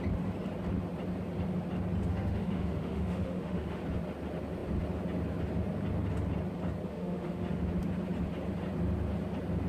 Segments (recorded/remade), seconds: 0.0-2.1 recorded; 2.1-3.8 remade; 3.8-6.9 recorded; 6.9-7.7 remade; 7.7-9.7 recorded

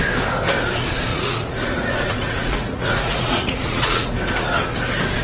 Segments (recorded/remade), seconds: 0.0-1.1 recorded; 1.1-4.1 remade; 4.1-5.2 recorded

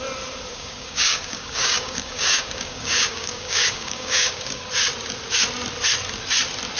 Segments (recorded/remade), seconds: 0.0-0.5 recorded; 0.5-4.6 remade; 4.6-6.8 recorded